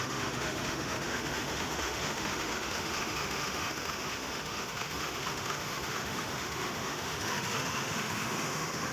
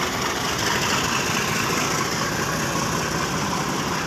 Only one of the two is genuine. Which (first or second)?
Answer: second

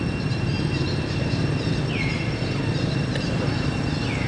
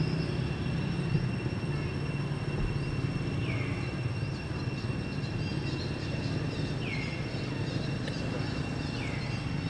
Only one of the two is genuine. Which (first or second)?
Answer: second